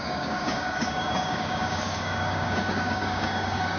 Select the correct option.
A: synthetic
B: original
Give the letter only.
A